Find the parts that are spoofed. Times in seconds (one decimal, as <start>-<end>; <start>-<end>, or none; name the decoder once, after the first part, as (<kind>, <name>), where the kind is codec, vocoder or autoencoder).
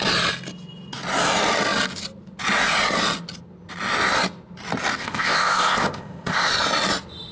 5.0-6.5 (codec, ZipCodec)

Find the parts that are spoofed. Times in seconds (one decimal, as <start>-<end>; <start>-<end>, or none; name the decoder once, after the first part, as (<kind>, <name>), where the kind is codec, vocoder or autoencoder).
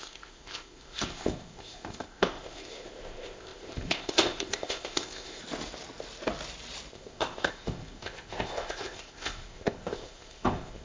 0.0-5.4 (codec, ZipCodec); 6.9-10.8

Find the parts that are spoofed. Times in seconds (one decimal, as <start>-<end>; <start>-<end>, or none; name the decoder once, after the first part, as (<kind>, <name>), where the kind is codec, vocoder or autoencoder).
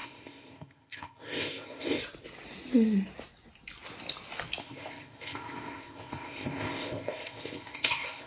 0.0-2.0 (codec, ZipCodec); 4.6-8.3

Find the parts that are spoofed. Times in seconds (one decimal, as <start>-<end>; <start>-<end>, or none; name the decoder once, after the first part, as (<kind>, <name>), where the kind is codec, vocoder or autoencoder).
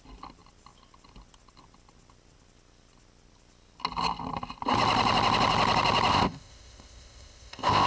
6.1-7.9 (codec, ZipCodec)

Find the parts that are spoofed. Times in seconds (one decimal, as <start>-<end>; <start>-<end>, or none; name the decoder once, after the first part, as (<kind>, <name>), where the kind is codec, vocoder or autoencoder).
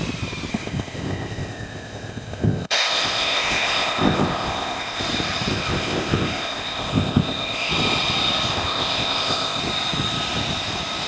0.5-5.0 (codec, ZipCodec); 5.5-7.7; 8.5-9.6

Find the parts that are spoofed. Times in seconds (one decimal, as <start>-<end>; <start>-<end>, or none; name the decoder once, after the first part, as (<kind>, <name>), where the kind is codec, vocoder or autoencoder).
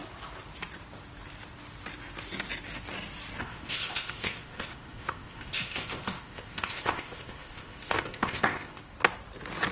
3.4-8.8 (codec, ZipCodec)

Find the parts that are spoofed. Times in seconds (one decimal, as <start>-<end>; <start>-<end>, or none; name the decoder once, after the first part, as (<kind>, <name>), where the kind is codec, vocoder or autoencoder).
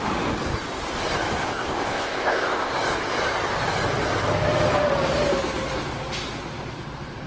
1.4-2.7 (codec, ZipCodec)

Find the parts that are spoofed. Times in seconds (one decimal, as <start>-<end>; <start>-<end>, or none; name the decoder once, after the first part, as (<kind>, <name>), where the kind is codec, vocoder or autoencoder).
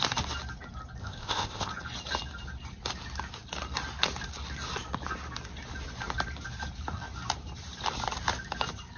1.0-1.7 (codec, ZipCodec)